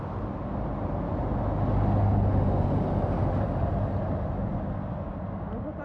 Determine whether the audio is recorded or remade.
recorded